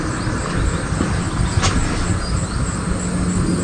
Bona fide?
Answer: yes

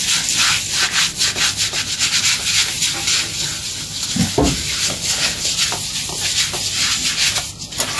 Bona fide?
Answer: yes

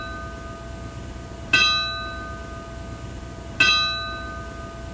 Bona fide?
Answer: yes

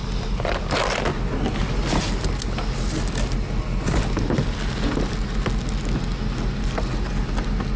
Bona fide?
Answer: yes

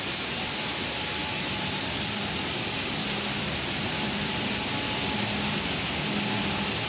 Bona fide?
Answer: yes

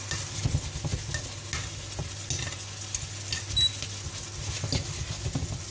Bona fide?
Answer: yes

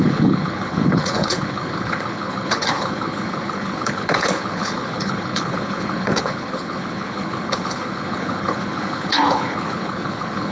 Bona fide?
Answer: no